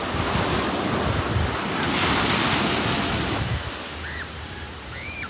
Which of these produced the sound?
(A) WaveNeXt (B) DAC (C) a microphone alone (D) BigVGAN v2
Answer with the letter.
C